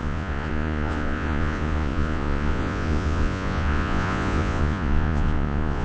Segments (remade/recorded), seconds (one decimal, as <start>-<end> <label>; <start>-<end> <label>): 0.0-5.8 remade